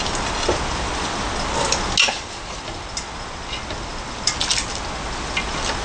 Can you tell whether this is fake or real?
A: real